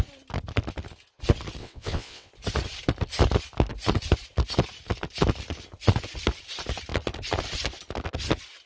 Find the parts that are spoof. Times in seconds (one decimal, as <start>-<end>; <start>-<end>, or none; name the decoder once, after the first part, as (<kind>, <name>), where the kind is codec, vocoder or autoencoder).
1.6-2.3 (vocoder, WaveNeXt)